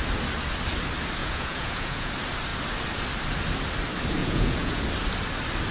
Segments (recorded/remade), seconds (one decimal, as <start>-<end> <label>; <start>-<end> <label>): 0.0-1.2 recorded; 1.2-2.1 remade; 2.1-4.2 recorded; 4.2-4.8 remade; 4.8-5.7 recorded